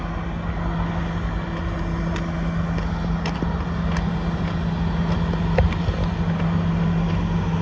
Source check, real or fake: real